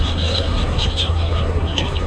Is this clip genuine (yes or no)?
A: no